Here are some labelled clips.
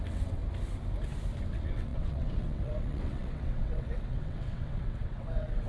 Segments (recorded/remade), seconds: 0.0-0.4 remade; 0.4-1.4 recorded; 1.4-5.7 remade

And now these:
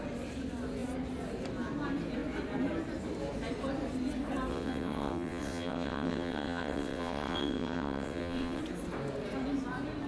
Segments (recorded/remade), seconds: 0.0-4.5 recorded; 4.5-8.6 remade; 8.6-10.1 recorded